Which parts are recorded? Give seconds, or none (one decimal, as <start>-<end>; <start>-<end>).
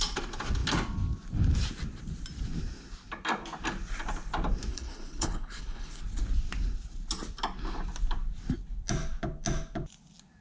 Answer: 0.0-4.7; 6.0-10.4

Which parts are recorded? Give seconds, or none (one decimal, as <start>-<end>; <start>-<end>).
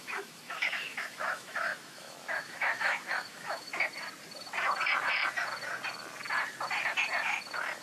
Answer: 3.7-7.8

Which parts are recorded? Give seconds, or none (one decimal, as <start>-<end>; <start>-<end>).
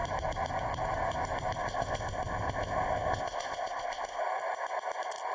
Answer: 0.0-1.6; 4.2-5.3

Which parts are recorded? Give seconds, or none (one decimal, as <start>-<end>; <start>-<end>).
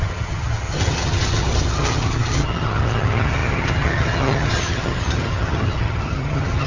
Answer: none